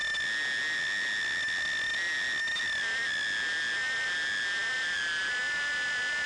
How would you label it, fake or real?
real